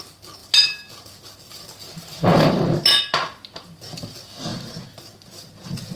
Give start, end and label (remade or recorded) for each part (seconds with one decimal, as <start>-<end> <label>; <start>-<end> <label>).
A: 0.0-6.0 recorded